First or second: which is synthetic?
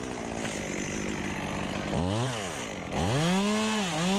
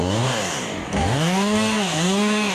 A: second